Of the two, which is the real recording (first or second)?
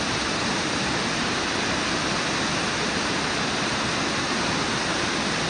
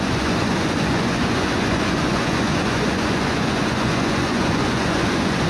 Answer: first